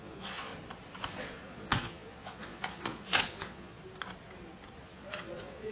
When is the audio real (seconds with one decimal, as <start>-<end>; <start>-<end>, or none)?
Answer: 0.5-1.2; 3.8-4.8